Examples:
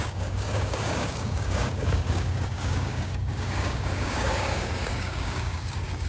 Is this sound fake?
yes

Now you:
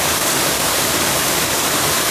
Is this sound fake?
yes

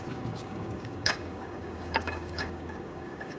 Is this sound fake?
yes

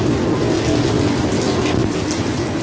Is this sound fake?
no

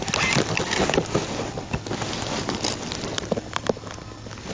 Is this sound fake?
no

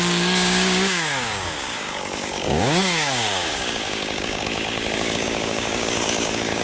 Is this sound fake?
yes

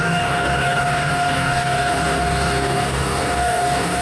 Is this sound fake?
yes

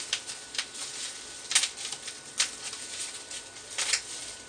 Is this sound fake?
no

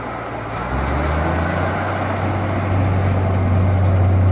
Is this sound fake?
no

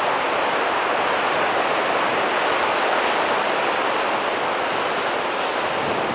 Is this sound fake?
no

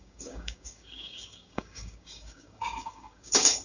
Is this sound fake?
yes